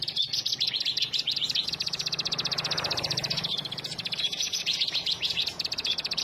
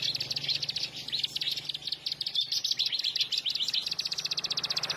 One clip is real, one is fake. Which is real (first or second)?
second